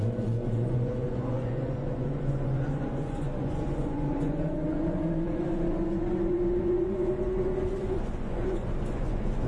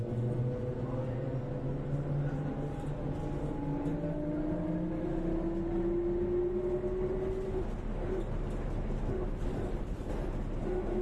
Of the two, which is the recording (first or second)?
second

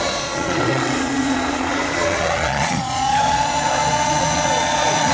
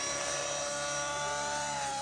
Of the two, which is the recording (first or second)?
second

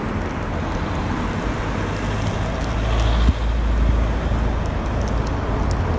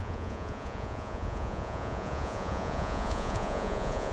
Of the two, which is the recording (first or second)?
first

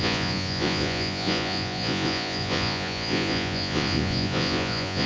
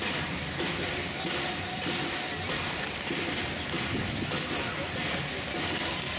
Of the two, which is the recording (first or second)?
second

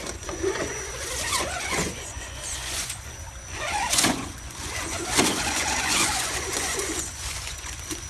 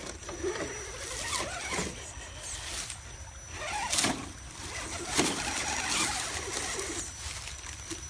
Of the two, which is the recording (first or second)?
second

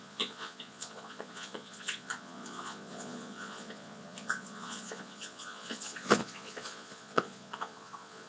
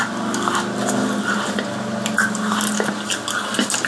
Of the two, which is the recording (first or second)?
second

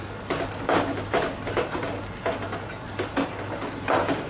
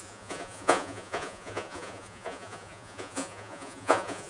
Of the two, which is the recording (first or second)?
first